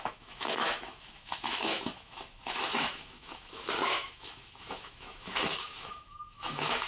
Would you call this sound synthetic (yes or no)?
yes